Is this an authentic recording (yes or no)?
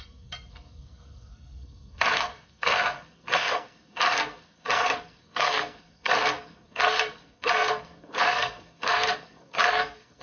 no